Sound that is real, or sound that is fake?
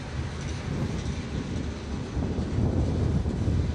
real